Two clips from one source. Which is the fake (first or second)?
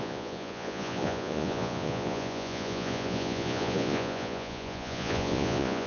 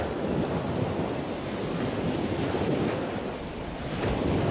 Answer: first